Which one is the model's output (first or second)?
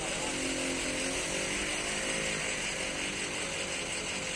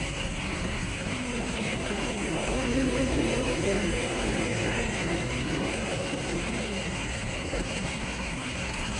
second